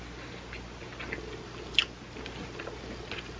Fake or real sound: real